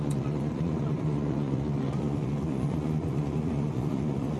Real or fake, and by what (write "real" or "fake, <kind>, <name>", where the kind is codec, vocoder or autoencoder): fake, vocoder, Vocos